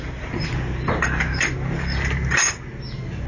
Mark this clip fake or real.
real